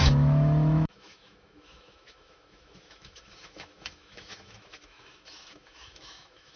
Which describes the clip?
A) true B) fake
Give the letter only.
B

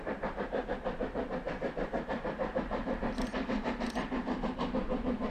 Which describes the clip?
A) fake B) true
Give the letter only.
B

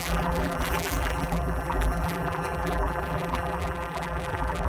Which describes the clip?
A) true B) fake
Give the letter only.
B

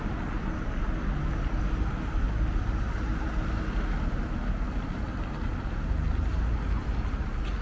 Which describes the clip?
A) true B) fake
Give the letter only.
A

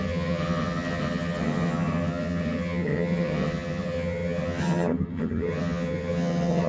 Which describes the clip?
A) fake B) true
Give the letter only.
A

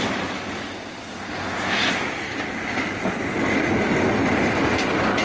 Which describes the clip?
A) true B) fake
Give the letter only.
A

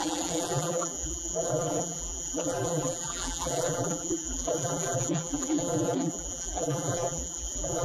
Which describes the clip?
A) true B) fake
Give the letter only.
B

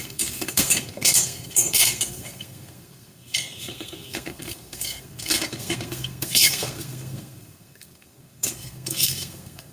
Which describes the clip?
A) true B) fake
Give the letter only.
B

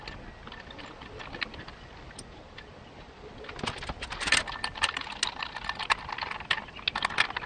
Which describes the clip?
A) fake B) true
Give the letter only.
B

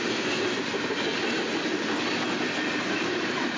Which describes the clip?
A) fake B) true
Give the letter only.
B